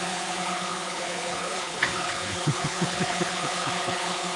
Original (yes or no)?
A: no